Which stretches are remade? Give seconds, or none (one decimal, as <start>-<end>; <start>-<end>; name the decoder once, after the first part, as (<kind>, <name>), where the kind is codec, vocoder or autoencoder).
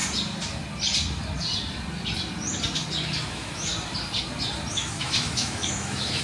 3.3-3.7 (autoencoder, DAC-VAE); 4.7-6.2